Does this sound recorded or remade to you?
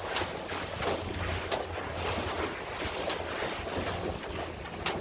recorded